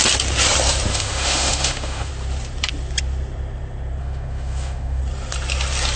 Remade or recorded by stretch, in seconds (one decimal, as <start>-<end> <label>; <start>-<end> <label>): 0.0-0.9 recorded; 0.9-2.1 remade; 2.1-4.0 recorded; 4.0-5.0 remade; 5.0-6.0 recorded

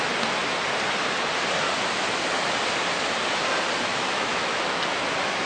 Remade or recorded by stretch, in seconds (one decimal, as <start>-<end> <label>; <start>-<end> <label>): 0.0-3.9 recorded; 3.9-4.8 remade; 4.8-5.5 recorded

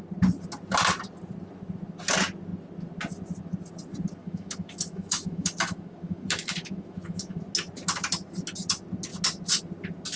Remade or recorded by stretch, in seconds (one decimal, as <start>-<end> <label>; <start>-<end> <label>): 0.0-4.2 recorded; 4.2-7.4 remade; 7.4-10.2 recorded

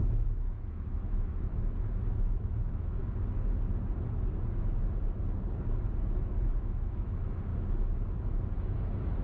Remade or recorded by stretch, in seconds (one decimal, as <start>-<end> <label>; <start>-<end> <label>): 0.0-3.0 remade; 3.0-6.6 recorded; 6.6-7.5 remade; 7.5-8.6 recorded; 8.6-9.2 remade